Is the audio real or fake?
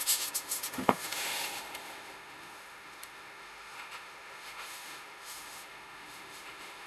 fake